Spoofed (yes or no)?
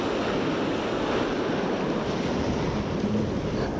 no